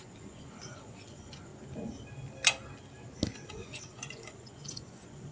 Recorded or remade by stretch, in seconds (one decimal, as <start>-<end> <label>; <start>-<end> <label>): 0.0-1.5 remade; 1.5-3.5 recorded; 3.5-5.3 remade